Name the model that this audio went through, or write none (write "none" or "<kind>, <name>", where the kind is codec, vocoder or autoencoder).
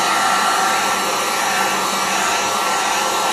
none